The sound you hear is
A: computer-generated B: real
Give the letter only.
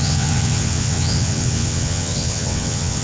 A